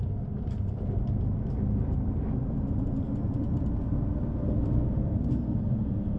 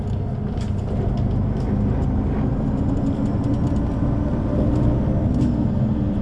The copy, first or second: first